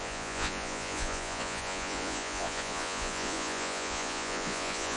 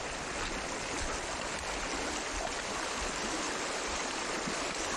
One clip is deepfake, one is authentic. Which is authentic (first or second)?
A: second